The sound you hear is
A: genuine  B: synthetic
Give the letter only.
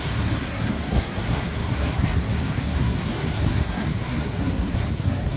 B